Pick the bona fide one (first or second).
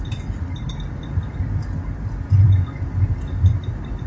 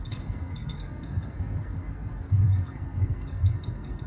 first